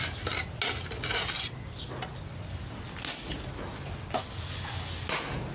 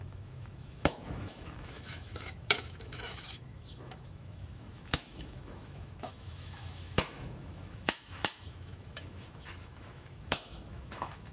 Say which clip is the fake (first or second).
second